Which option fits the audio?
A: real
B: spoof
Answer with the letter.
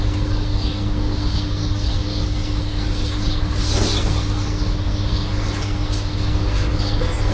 B